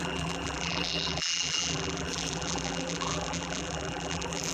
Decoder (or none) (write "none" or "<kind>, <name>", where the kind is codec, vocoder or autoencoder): vocoder, BigVGAN v2